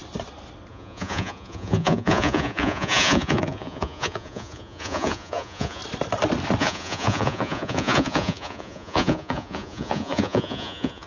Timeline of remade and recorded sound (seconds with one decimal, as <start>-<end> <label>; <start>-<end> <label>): 0.0-0.7 recorded; 0.7-5.8 remade; 5.8-6.6 recorded; 6.6-11.1 remade